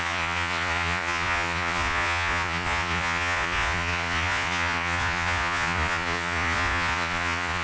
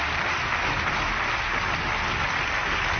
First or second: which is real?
second